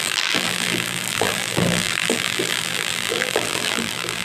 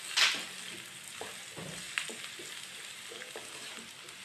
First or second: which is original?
second